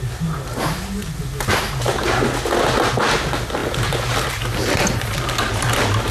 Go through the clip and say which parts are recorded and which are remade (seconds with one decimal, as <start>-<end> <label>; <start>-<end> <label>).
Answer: 0.0-6.1 recorded